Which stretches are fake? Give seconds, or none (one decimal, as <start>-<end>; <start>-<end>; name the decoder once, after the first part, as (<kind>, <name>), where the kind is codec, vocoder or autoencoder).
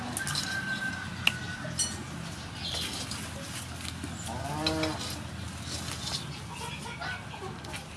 none